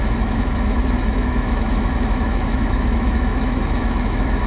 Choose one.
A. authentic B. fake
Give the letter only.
B